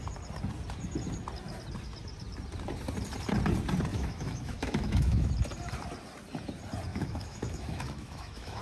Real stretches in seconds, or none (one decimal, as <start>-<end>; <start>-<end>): 0.0-3.9; 5.3-6.9